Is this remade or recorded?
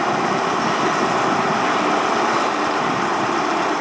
recorded